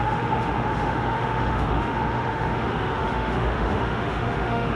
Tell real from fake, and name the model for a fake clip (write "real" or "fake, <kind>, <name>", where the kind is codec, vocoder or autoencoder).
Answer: fake, autoencoder, DAC-VAE